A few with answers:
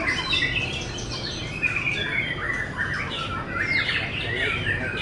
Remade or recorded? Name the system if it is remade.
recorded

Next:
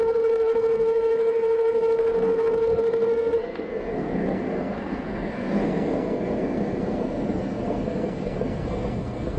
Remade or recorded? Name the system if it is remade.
remade, codec, SNAC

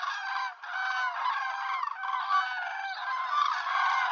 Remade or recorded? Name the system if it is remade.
recorded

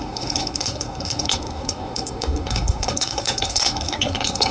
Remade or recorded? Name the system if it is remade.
remade, codec, SNAC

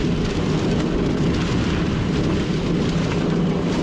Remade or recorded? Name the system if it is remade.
recorded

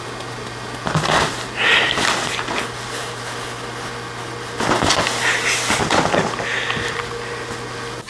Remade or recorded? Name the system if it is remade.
recorded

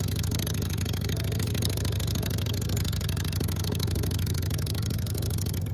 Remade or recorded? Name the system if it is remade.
remade, codec, SNAC